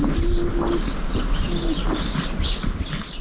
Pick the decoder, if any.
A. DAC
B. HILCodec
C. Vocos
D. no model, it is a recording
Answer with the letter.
D